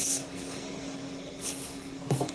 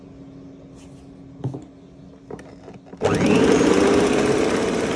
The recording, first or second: second